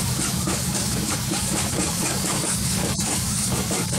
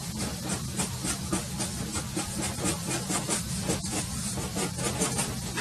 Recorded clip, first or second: second